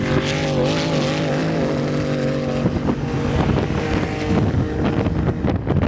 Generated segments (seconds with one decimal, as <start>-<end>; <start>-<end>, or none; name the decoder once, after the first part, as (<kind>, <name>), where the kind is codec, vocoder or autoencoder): none